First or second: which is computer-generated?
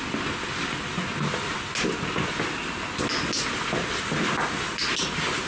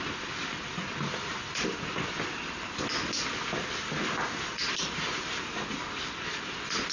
second